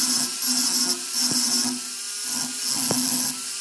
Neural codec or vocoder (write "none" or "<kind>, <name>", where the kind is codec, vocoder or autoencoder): none